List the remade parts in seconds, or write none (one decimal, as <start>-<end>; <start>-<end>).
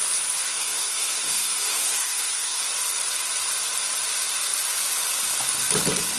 0.5-2.6